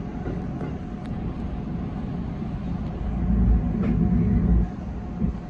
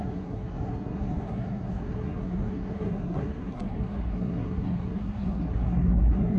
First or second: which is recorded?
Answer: first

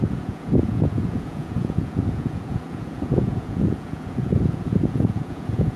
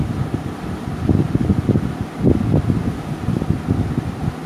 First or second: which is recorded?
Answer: second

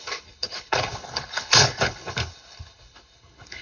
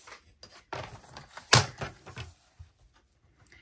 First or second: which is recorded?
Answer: second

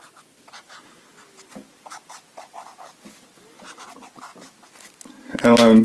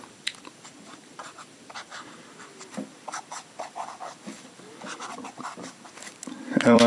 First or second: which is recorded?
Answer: first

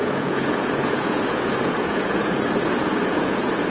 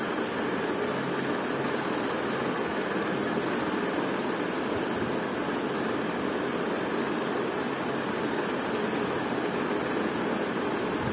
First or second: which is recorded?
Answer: second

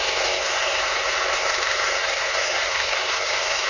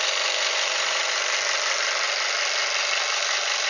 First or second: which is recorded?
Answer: second